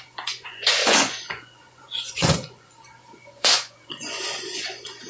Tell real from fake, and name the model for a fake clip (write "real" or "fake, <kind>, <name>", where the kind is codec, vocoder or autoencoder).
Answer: fake, vocoder, Vocos